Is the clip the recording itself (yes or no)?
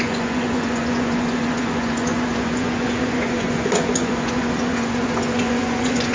no